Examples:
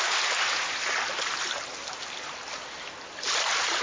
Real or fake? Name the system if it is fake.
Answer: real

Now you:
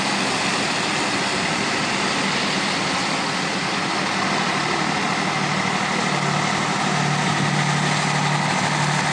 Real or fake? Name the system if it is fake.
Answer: real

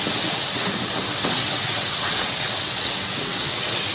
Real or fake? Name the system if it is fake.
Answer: fake, vocoder, WaveNeXt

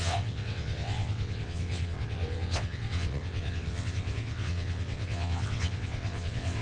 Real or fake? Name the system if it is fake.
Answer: fake, vocoder, WaveNeXt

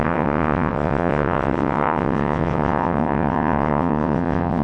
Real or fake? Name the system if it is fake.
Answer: fake, vocoder, WaveNeXt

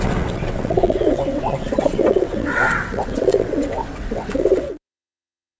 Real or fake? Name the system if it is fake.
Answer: fake, vocoder, WaveNeXt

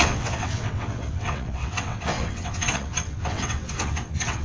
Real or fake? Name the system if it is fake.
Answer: fake, vocoder, WaveNeXt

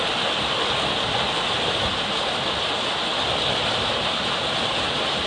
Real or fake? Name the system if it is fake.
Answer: real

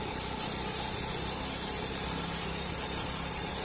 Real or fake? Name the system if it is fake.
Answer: real